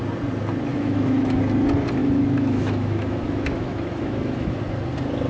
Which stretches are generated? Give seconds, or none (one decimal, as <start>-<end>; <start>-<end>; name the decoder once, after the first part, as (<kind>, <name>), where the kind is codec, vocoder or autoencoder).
0.7-1.4 (autoencoder, DAC-VAE); 2.0-4.6